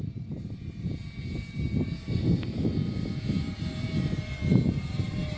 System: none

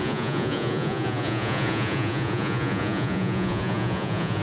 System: vocoder, Vocos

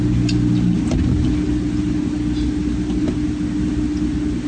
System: none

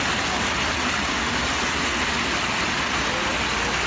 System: none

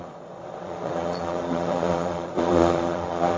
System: vocoder, Vocos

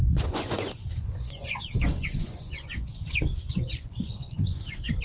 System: vocoder, Vocos